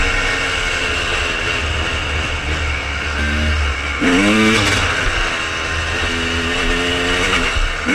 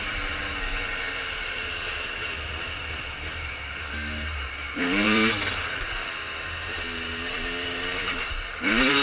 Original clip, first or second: first